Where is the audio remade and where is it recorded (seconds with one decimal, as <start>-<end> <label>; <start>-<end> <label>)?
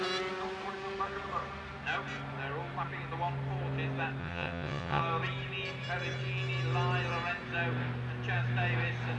0.0-4.2 recorded; 4.2-5.0 remade; 5.0-9.2 recorded